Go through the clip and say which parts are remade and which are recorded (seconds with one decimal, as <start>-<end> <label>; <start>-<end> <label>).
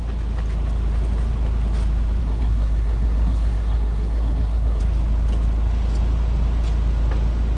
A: 0.0-2.2 recorded; 2.2-4.8 remade; 4.8-7.6 recorded